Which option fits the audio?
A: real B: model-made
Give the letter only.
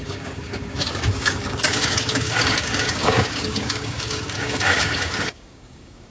B